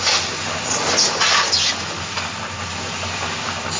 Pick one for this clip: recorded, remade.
recorded